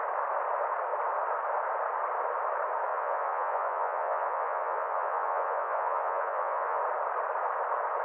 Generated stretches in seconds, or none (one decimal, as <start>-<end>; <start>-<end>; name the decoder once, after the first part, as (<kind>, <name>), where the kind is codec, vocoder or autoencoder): 2.9-6.8 (vocoder, Vocos)